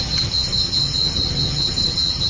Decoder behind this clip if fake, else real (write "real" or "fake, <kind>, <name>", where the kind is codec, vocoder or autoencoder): fake, vocoder, HiFi-GAN